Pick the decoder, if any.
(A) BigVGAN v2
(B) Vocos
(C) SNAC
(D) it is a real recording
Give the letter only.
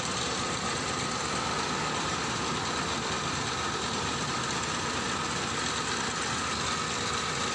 D